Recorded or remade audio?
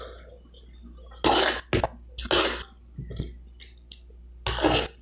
recorded